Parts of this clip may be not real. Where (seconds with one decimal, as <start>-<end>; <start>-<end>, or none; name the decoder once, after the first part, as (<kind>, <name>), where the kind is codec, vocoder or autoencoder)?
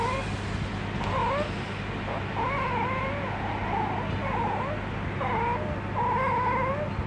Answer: none